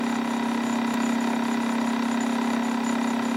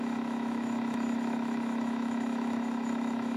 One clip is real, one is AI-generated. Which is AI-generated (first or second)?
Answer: second